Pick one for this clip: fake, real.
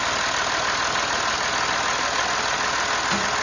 real